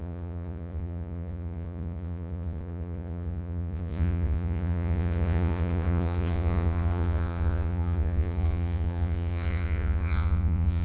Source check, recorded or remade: remade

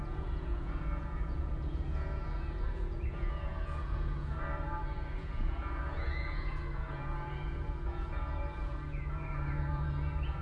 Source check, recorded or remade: remade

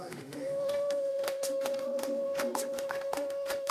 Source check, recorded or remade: remade